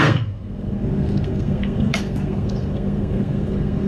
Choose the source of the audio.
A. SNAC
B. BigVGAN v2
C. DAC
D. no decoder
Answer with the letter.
A